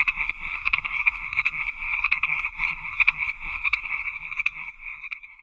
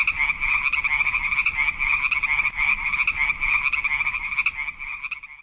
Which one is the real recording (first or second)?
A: second